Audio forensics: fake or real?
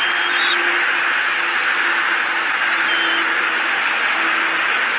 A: real